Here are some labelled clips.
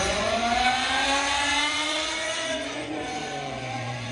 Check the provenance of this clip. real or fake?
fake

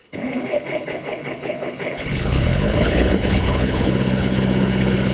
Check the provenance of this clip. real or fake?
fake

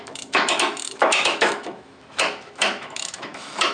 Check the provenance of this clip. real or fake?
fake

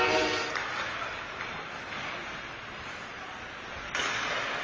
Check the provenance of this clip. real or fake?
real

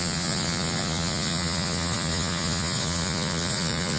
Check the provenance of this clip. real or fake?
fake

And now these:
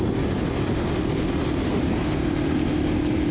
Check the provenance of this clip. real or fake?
real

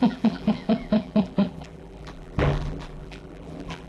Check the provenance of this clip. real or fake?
fake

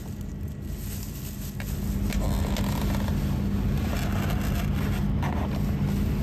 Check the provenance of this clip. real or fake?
real